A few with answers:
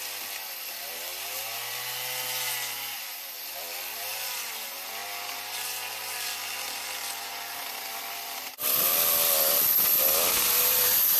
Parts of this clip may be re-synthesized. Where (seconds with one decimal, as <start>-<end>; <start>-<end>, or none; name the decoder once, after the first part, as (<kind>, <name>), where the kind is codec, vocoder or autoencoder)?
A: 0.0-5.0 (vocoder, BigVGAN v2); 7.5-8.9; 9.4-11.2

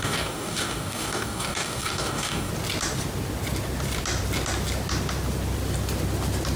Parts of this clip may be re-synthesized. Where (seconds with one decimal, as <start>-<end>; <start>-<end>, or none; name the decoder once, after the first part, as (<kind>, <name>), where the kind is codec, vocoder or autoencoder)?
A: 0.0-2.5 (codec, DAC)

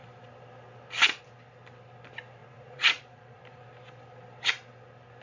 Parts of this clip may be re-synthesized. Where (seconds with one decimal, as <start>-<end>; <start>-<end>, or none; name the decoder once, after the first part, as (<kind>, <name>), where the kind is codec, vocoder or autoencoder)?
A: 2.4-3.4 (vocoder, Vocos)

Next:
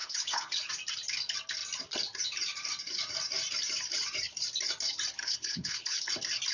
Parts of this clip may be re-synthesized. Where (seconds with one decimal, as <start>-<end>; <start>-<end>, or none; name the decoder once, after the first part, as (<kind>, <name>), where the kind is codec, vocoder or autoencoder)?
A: 0.0-0.7 (codec, HILCodec); 5.2-6.1

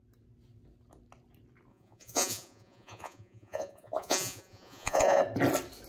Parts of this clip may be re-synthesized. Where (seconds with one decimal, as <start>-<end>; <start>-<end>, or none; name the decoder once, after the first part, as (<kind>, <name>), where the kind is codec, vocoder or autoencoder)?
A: 1.7-5.2 (vocoder, Vocos)

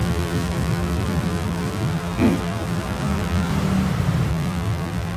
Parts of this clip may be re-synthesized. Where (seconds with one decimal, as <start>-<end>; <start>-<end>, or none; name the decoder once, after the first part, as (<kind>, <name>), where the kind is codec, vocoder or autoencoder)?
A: 0.0-3.5 (vocoder, BigVGAN v2); 4.3-5.2